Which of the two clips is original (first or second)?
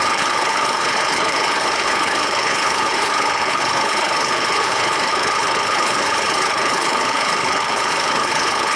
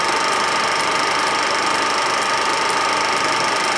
second